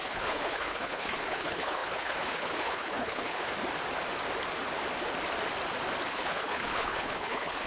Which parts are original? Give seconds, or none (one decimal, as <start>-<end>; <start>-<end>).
3.5-6.1